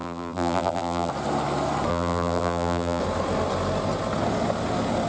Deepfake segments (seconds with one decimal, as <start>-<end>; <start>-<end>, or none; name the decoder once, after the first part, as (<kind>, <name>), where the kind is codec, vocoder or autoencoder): 0.0-1.1 (vocoder, BigVGAN v2); 1.9-3.0